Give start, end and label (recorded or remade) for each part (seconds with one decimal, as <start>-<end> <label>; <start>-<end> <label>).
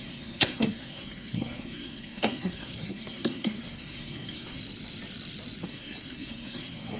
0.0-4.6 remade; 4.6-5.7 recorded; 5.7-7.0 remade